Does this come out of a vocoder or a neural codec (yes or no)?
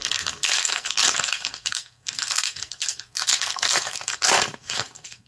yes